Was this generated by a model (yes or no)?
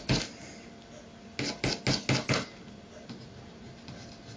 no